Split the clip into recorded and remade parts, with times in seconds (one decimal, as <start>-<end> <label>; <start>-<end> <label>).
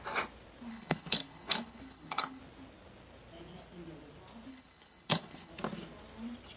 0.0-0.7 recorded; 0.7-2.4 remade; 2.4-4.5 recorded; 4.5-5.5 remade; 5.5-6.6 recorded